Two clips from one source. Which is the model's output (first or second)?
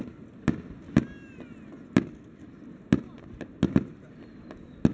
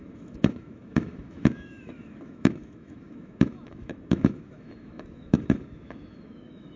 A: second